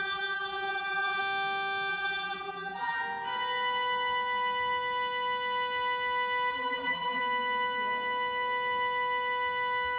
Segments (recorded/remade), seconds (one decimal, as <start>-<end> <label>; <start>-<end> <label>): 0.0-1.2 remade; 1.2-1.9 recorded; 1.9-3.0 remade; 3.0-6.5 recorded; 6.5-7.2 remade; 7.2-10.0 recorded